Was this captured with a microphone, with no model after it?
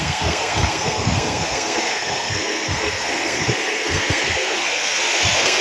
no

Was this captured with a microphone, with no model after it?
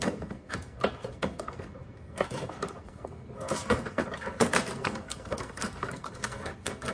no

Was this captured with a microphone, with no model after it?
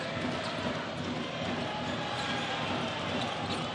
yes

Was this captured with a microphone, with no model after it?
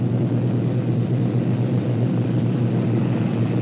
yes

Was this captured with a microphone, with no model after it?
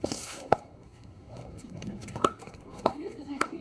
no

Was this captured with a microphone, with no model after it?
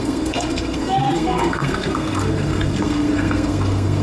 no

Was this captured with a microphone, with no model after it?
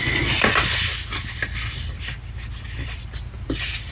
yes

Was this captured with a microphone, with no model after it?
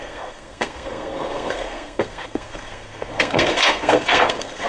no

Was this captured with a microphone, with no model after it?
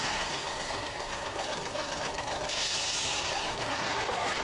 no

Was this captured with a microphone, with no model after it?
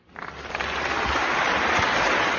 yes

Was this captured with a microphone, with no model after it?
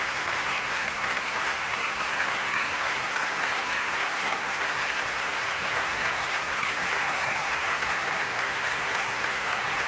no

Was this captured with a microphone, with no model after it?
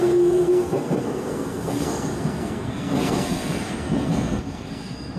no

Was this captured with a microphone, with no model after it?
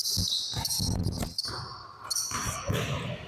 yes